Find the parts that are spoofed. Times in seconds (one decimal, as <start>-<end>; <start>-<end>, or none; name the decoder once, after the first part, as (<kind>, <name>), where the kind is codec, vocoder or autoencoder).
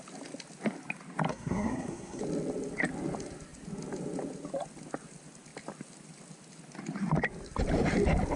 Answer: 1.3-2.2 (codec, SNAC)